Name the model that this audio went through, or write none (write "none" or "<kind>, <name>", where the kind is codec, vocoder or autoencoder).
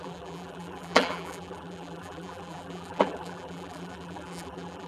vocoder, BigVGAN v2